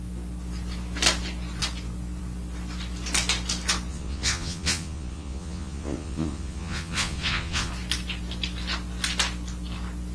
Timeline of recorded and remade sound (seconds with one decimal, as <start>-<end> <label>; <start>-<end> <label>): 0.0-3.9 recorded; 3.9-7.7 remade; 7.7-10.1 recorded